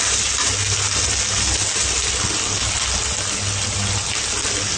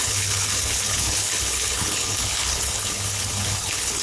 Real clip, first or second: first